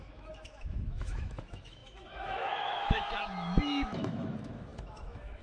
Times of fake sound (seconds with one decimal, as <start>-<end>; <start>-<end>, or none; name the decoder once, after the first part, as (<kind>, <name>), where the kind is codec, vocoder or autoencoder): 0.0-5.4 (autoencoder, DAC-VAE)

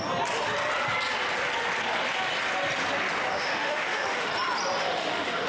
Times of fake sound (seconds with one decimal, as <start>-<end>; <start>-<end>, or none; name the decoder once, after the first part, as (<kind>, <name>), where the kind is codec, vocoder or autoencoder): 3.3-4.3 (autoencoder, DAC-VAE); 4.8-5.5

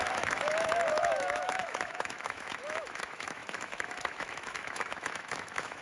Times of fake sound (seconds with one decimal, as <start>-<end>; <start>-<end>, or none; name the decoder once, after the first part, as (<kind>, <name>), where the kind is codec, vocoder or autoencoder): 0.0-5.8 (autoencoder, DAC-VAE)

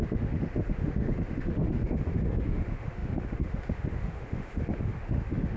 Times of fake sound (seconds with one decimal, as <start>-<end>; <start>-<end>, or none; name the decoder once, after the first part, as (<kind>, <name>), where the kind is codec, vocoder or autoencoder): 0.0-5.6 (autoencoder, DAC-VAE)

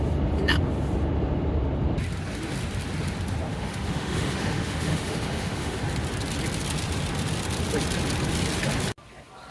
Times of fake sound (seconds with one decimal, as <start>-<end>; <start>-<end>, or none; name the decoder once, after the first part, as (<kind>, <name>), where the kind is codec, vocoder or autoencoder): 3.5-5.8 (autoencoder, DAC-VAE)

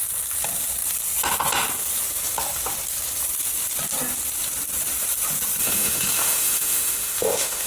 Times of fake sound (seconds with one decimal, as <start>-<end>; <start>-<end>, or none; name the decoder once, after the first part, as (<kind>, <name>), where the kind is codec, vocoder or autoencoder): 5.6-7.7 (autoencoder, DAC-VAE)

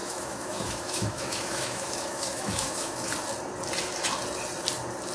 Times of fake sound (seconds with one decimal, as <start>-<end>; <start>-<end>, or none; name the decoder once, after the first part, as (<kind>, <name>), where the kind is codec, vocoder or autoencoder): 0.0-3.1 (autoencoder, DAC-VAE)

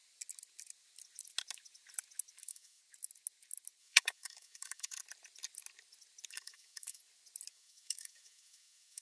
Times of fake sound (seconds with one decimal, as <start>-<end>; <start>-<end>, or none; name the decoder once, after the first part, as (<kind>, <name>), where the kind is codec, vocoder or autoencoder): 2.4-2.8 (autoencoder, DAC-VAE); 3.8-5.0; 6.3-7.0; 7.5-9.0